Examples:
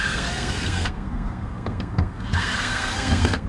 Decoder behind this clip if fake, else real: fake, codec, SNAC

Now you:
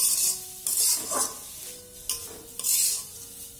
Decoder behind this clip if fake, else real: real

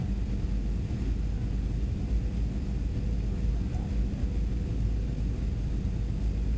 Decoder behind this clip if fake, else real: real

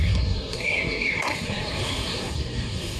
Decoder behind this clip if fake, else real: fake, codec, SNAC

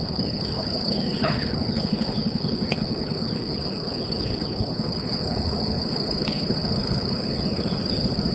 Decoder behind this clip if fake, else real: fake, codec, HILCodec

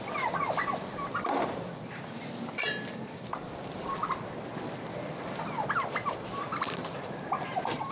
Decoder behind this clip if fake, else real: real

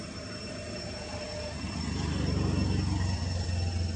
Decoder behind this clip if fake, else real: real